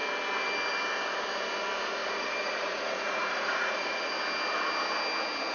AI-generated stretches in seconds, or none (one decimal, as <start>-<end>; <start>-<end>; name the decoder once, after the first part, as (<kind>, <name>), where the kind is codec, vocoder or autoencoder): 2.0-4.1 (vocoder, Vocos)